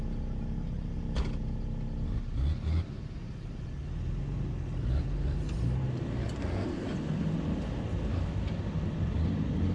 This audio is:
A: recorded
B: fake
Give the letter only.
A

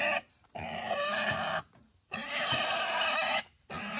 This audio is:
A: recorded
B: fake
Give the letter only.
A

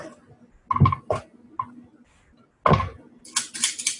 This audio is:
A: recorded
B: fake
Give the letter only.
A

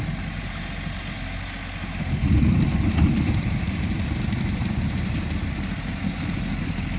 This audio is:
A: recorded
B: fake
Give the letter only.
B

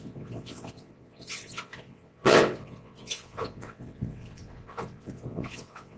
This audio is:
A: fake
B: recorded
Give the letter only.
A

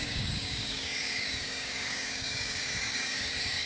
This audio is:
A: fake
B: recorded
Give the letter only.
A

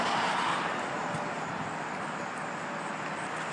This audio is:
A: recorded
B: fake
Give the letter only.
A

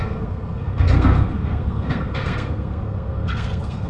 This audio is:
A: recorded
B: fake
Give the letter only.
B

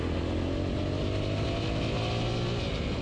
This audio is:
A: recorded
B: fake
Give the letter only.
A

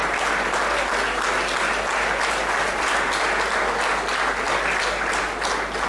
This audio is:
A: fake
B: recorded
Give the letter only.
B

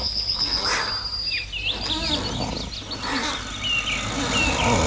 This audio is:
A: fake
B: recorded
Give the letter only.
B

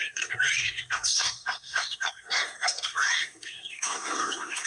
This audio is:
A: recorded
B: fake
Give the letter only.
B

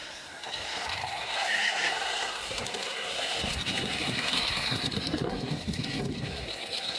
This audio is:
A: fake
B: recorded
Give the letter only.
A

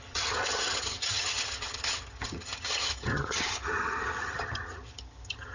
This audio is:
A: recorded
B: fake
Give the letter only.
B